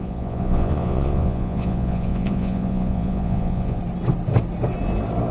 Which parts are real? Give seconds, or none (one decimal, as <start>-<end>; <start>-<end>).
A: 3.8-5.3